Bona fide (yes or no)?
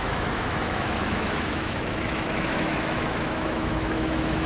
no